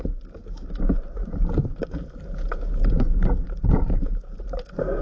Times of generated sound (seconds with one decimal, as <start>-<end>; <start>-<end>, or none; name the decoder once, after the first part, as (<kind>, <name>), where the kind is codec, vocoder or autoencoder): 0.0-5.0 (vocoder, BigVGAN v2)